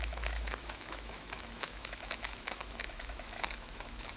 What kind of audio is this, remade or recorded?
remade